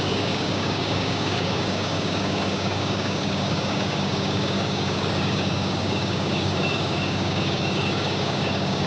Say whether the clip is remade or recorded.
remade